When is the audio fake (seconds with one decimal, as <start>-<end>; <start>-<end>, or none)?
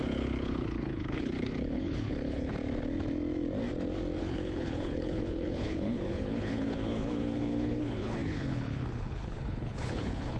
0.0-2.6; 4.2-10.4